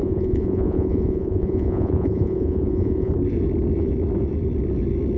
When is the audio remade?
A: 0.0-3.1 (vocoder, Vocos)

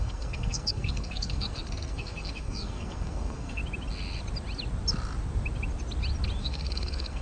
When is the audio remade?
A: 0.0-3.6 (codec, SNAC); 6.4-7.2

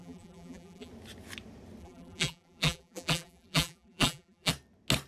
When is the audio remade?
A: 0.0-0.9 (vocoder, BigVGAN v2); 1.8-4.5

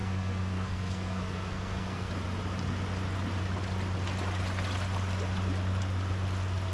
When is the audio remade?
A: 0.0-2.1 (codec, SNAC)